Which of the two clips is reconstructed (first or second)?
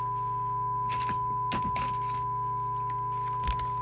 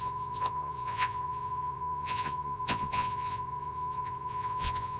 second